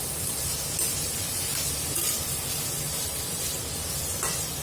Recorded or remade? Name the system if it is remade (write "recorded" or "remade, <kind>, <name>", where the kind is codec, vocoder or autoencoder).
remade, vocoder, BigVGAN v2